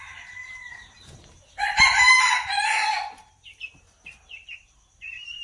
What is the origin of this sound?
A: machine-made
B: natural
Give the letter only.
A